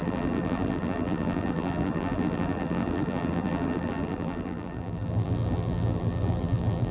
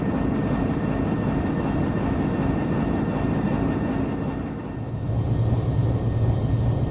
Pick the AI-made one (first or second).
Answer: first